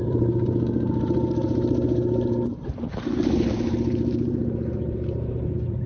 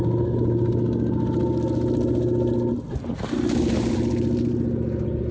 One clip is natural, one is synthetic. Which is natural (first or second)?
second